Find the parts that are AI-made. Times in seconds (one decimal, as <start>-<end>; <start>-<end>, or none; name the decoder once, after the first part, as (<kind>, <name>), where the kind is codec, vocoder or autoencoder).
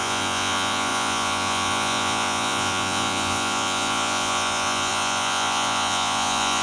0.0-6.6 (vocoder, Vocos)